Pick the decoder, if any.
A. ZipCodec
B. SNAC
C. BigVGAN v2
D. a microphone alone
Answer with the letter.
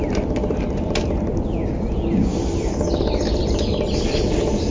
D